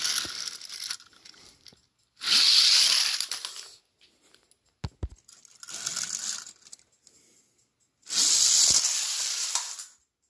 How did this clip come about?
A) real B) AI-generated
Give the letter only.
A